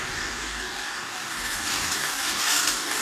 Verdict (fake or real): fake